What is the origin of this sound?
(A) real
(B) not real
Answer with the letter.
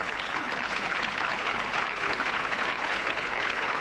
B